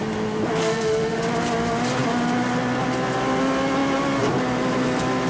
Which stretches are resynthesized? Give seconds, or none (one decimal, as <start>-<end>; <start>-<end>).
0.6-1.2